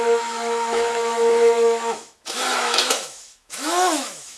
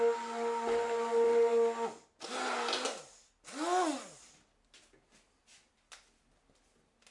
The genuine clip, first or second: second